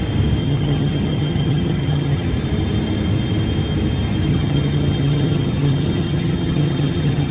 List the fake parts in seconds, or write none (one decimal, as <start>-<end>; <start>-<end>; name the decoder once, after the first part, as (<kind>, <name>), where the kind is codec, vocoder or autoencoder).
0.4-2.3 (vocoder, HiFi-GAN); 4.3-7.3